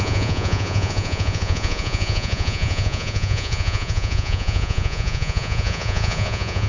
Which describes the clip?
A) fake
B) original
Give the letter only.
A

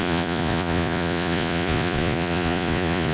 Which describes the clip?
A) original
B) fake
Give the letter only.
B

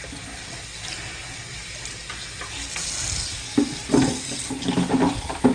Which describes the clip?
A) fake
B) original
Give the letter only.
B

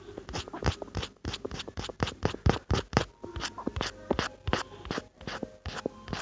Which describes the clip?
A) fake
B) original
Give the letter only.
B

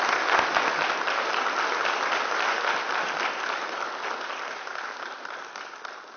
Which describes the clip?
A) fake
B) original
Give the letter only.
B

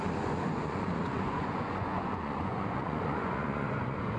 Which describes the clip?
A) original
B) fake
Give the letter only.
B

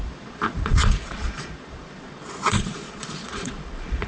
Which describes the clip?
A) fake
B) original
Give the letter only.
A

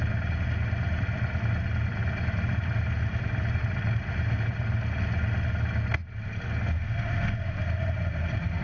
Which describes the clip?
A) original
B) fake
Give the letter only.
A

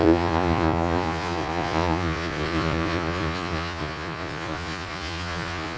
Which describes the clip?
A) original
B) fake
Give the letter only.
B